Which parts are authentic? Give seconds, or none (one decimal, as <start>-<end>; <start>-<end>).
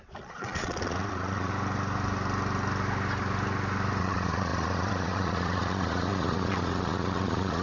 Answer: 1.5-4.0